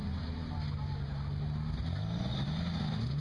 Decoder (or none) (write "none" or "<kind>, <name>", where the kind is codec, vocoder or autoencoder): none